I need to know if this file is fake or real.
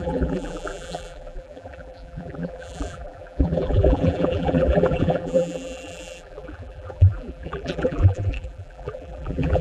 fake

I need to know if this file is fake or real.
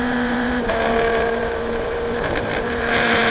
fake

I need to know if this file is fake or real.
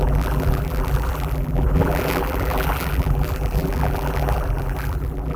fake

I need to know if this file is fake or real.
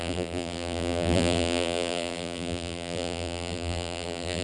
fake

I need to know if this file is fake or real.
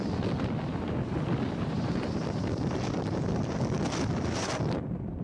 fake